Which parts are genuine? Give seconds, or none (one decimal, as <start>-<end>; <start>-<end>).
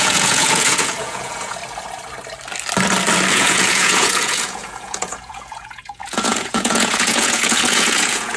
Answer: 1.6-3.3